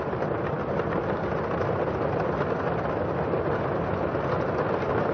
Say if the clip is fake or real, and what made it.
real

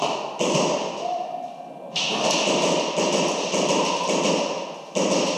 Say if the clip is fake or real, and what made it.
real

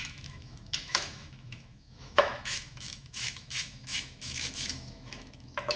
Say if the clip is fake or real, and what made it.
fake, autoencoder, DAC-VAE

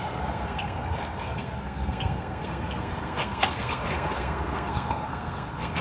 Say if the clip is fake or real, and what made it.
fake, codec, SNAC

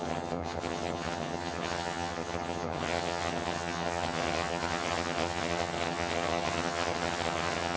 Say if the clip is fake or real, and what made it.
fake, vocoder, HiFi-GAN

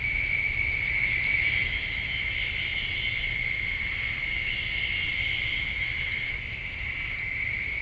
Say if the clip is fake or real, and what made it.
real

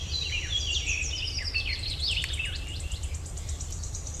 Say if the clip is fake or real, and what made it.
fake, vocoder, BigVGAN v2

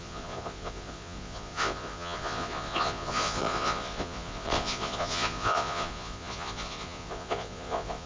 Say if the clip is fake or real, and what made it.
fake, vocoder, Vocos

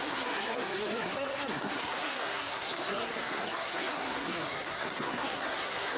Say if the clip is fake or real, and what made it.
fake, codec, SNAC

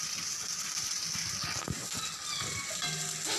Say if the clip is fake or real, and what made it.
real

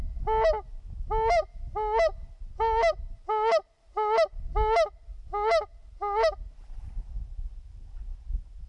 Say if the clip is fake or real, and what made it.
real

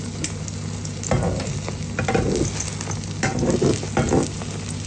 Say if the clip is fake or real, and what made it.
real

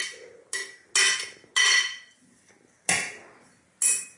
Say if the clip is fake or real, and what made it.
real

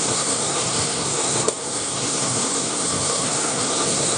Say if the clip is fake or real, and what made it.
fake, codec, SNAC